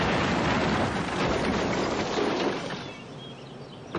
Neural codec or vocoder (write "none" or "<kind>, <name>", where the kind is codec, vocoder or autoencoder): none